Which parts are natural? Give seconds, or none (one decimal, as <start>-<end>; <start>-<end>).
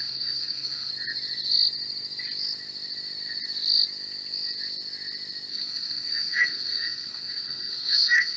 0.9-5.5